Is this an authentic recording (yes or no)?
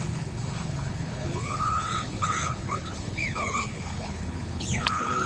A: no